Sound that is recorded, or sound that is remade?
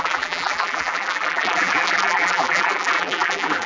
remade